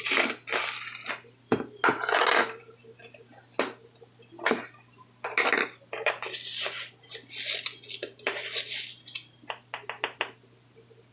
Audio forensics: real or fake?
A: real